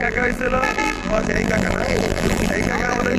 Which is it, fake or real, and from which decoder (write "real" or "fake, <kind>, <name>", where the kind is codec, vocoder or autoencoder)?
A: fake, vocoder, BigVGAN v2